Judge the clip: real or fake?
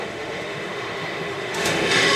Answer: fake